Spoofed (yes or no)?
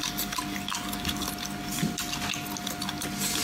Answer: no